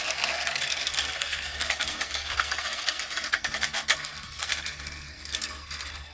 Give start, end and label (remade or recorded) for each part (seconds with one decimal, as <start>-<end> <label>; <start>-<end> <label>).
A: 0.0-6.1 remade